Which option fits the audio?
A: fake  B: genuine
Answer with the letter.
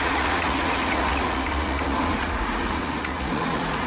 A